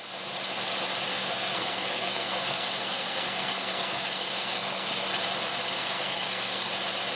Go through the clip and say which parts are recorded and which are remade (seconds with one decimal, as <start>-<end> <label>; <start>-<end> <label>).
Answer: 0.0-1.1 recorded; 1.1-5.1 remade; 5.1-5.8 recorded; 5.8-6.7 remade; 6.7-7.2 recorded